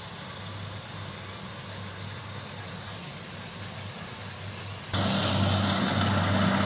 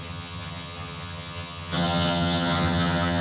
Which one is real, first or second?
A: first